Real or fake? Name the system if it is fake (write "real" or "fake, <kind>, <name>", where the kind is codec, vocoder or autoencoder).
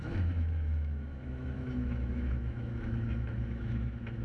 fake, autoencoder, DAC-VAE